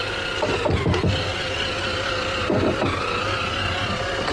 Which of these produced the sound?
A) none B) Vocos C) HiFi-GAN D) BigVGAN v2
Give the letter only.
A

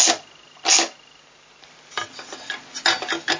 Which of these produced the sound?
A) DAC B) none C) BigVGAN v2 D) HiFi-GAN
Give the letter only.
B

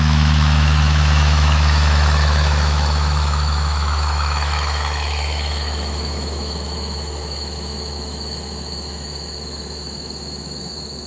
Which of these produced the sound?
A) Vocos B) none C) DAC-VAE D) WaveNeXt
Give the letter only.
C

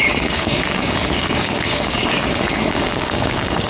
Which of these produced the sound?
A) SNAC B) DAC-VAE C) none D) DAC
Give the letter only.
D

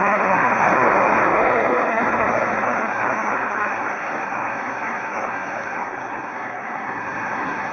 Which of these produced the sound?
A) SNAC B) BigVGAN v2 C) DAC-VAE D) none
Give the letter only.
A